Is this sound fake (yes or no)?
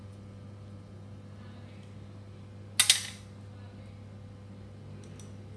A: no